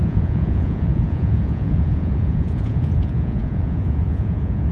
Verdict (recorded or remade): remade